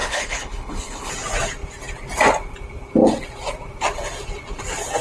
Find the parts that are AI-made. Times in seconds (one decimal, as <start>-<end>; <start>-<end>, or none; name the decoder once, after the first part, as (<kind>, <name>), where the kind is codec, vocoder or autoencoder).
0.0-1.1 (codec, HILCodec)